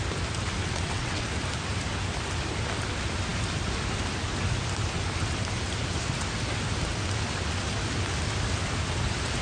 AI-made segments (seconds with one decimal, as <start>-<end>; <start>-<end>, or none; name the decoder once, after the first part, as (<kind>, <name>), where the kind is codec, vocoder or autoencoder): 0.6-1.2 (vocoder, WaveNeXt)